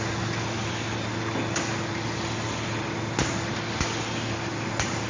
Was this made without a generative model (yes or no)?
yes